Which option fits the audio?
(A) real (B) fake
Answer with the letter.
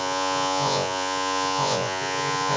B